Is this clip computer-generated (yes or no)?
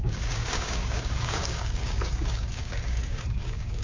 yes